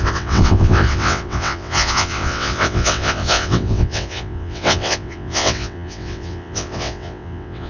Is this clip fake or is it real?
fake